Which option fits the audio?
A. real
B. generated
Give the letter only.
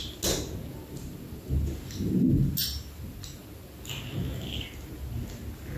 A